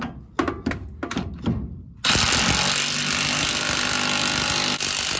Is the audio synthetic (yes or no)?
no